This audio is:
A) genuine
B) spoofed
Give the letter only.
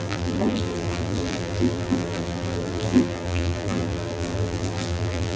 B